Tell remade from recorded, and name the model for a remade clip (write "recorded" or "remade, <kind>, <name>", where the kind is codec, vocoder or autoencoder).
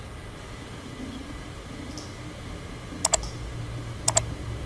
recorded